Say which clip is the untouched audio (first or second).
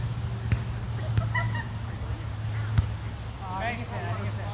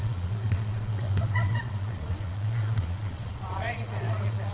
first